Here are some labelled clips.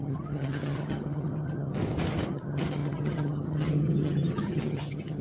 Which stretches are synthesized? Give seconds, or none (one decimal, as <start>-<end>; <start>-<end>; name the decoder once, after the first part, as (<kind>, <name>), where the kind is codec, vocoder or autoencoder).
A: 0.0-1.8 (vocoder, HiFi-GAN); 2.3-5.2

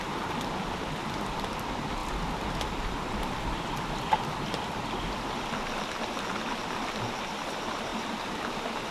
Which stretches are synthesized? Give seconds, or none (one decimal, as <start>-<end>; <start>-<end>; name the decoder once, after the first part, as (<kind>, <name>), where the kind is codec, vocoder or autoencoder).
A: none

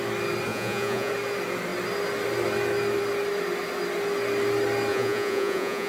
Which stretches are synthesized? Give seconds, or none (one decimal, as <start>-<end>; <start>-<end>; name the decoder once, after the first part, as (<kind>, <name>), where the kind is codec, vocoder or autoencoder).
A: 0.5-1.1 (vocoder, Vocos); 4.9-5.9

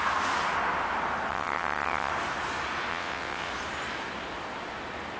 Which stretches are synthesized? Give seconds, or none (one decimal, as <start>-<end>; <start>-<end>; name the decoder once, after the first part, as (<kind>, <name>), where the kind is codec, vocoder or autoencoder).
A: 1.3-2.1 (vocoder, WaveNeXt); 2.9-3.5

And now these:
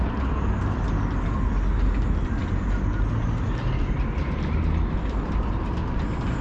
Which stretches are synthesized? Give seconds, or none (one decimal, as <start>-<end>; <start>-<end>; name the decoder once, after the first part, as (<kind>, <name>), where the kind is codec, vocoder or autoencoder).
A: none

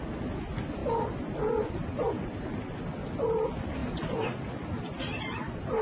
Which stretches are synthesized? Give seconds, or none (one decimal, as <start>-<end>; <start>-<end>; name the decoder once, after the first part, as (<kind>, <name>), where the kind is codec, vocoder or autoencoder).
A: none

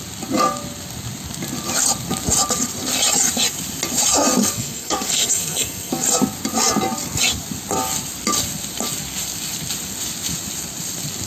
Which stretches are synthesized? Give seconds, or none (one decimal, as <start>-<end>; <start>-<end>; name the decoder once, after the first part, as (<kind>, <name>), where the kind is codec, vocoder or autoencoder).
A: 4.4-5.9 (codec, SNAC)

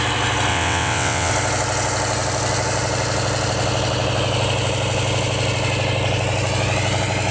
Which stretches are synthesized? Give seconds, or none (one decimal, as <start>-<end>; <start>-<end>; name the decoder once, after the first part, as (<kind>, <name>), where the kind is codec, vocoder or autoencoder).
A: 0.5-1.3 (vocoder, WaveNeXt)